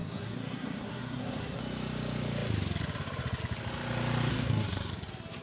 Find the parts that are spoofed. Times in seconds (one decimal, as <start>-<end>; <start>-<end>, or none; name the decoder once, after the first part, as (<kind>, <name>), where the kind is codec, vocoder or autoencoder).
0.0-1.6 (codec, SNAC); 4.3-4.9